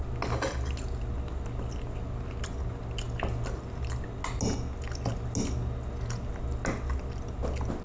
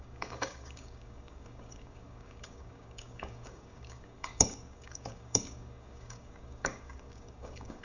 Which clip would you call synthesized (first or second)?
second